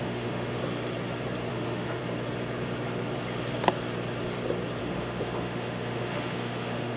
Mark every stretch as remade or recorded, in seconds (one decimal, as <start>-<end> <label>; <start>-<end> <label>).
0.0-0.6 remade; 0.6-1.5 recorded; 1.5-2.0 remade; 2.0-4.8 recorded; 4.8-7.0 remade